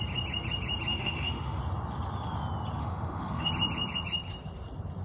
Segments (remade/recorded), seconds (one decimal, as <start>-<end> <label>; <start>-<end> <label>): 0.0-0.9 recorded; 0.9-1.6 remade; 1.6-2.8 recorded; 2.8-3.5 remade; 3.5-5.0 recorded